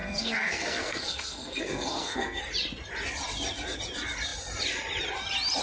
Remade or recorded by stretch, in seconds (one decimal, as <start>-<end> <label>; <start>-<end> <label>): 0.0-2.4 remade; 2.4-5.6 recorded